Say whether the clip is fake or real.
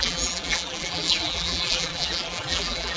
fake